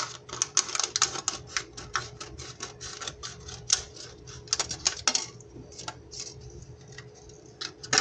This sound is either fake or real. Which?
real